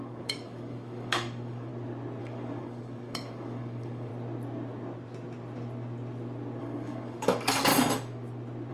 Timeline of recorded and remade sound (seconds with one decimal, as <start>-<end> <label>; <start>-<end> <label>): 0.0-1.7 remade; 1.7-2.2 recorded; 2.2-4.1 remade; 4.1-6.6 recorded; 6.6-7.7 remade; 7.7-8.7 recorded